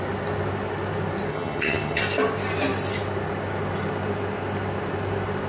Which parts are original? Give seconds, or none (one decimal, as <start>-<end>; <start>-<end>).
0.0-1.3; 2.0-5.5

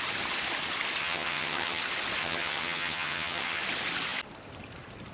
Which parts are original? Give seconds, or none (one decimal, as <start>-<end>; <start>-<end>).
0.0-1.0; 1.8-2.2; 3.6-5.1

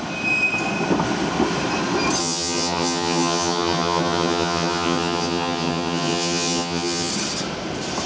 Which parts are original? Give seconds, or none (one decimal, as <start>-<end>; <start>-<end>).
0.0-2.2; 7.1-8.1

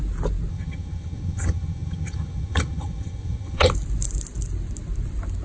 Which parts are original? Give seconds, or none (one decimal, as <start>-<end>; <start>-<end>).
0.0-0.5; 3.7-5.4

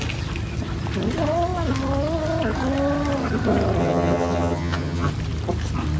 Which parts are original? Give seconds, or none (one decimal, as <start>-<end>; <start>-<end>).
0.0-3.8; 5.1-6.0